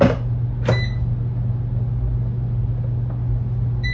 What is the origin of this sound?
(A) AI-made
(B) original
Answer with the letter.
B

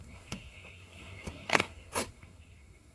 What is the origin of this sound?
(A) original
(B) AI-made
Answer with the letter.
B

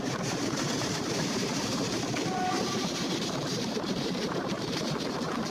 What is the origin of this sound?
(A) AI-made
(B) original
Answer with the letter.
A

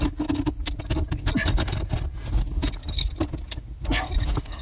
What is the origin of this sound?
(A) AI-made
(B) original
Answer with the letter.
B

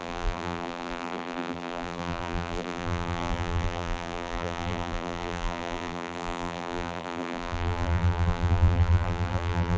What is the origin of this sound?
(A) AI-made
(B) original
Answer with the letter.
A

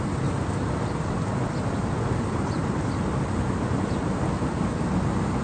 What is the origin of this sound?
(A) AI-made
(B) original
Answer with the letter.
B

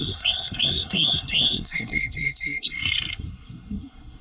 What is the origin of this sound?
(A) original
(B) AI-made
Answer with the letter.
B